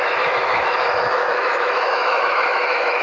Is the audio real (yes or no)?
no